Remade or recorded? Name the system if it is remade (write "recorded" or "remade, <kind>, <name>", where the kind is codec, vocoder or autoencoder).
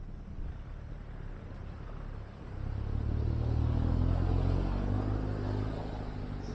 recorded